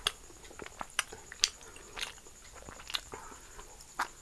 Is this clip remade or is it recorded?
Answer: recorded